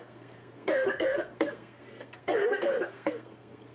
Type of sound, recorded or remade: remade